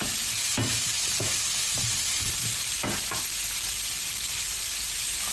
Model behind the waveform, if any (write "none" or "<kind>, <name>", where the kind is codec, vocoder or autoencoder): vocoder, BigVGAN v2